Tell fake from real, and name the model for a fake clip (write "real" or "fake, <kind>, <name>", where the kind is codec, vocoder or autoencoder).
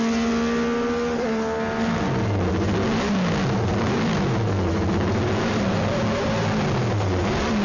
real